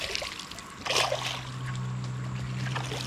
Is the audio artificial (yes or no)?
no